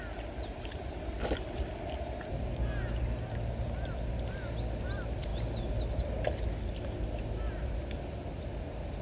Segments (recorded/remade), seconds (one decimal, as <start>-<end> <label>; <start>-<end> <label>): 0.0-9.0 recorded